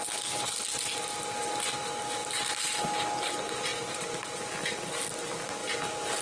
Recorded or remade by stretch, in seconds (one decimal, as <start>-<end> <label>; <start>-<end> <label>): 0.0-2.2 recorded; 2.2-2.8 remade; 2.8-6.2 recorded